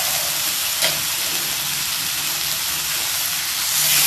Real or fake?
real